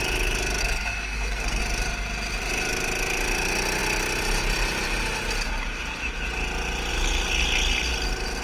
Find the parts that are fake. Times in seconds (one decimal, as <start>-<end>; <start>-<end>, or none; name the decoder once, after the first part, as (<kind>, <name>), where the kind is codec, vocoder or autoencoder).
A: 0.6-1.6 (codec, SNAC)